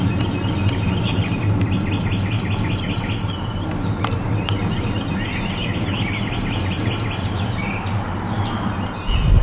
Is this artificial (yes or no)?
no